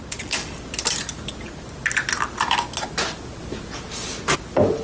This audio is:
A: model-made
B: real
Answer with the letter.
B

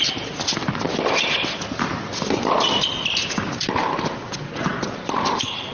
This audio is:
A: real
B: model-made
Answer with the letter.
A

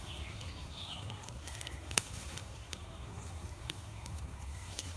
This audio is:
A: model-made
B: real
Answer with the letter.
A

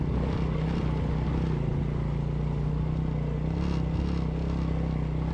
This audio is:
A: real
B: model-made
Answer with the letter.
A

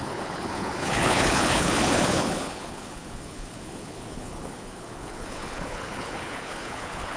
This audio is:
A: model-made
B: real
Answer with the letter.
A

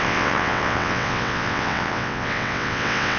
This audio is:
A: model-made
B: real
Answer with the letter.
A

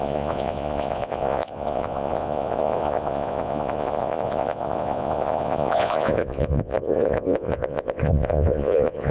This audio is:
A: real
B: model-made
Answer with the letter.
B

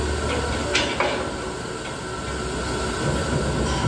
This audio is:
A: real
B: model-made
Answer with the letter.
A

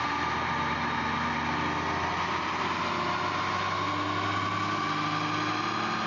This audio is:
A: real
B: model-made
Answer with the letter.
A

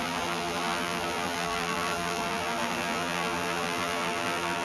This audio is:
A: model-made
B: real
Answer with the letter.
A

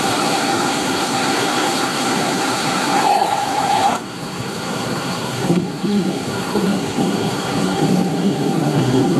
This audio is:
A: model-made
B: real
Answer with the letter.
A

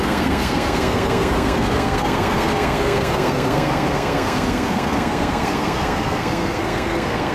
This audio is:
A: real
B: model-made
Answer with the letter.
B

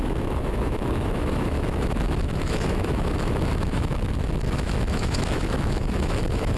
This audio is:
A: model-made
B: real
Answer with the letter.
A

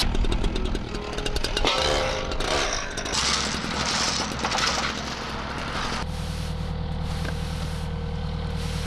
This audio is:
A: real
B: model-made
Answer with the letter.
A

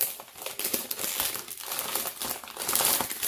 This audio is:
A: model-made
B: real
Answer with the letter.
B